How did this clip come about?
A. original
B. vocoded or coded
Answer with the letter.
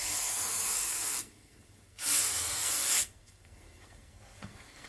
B